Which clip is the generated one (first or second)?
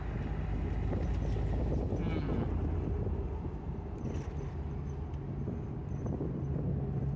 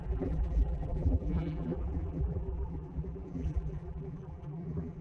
second